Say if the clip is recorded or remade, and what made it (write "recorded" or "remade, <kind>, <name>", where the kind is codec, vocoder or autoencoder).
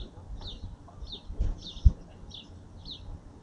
recorded